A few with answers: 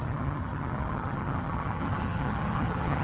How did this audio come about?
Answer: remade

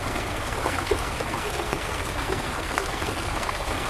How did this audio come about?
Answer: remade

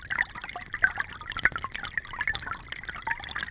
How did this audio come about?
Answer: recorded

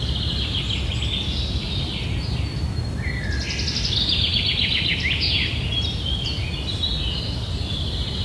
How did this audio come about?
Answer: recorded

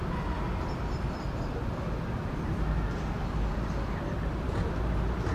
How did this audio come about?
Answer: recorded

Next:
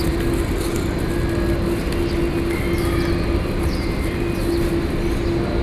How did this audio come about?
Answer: recorded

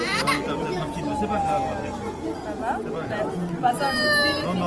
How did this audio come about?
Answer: recorded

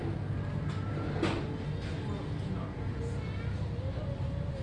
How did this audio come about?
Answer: recorded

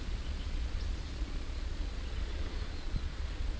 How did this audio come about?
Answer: remade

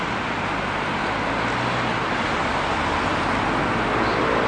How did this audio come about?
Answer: recorded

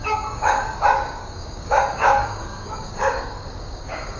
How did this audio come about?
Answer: remade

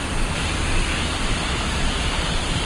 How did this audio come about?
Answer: recorded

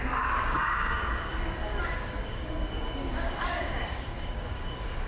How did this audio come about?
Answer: remade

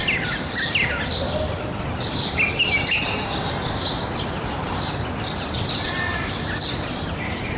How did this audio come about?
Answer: recorded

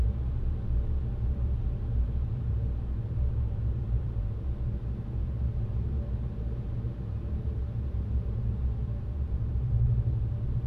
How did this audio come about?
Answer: remade